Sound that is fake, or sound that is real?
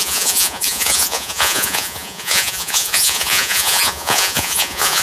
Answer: fake